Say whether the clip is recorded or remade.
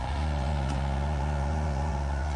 remade